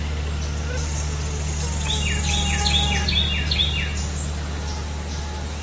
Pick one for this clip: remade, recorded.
recorded